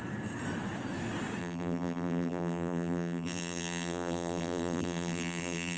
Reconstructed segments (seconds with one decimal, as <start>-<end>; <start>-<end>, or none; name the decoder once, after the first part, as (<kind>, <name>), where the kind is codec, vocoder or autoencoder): 1.4-5.8 (vocoder, BigVGAN v2)